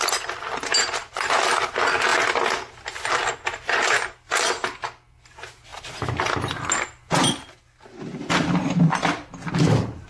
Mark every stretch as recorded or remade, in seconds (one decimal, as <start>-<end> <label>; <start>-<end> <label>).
0.0-10.1 recorded